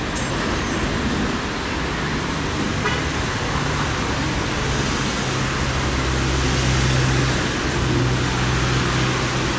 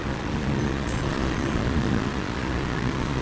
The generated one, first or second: second